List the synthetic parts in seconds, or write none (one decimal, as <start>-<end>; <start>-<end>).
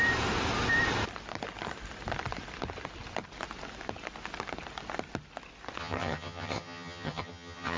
5.8-7.8